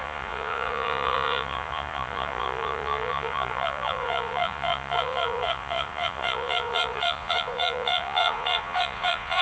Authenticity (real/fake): fake